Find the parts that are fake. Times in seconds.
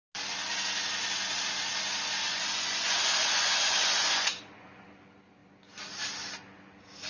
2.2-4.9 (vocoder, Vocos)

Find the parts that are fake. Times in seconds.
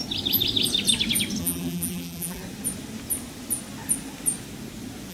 1.4-2.4 (vocoder, BigVGAN v2)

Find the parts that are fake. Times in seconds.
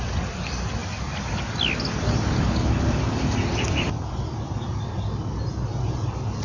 none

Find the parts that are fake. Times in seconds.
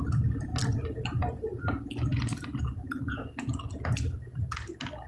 none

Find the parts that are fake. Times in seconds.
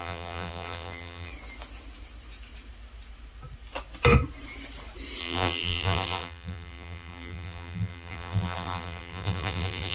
0.0-1.3 (vocoder, BigVGAN v2); 5.2-9.9